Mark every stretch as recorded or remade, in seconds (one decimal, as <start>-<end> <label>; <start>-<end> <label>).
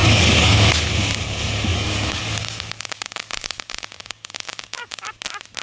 0.0-0.7 remade; 0.7-1.7 recorded; 1.7-5.1 remade; 5.1-5.6 recorded